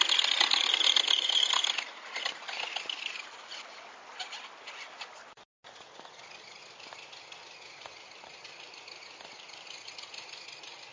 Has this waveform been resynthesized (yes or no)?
no